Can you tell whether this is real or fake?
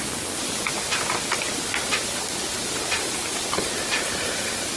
real